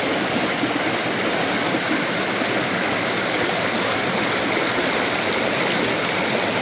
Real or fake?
real